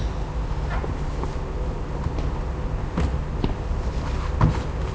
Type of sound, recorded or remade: recorded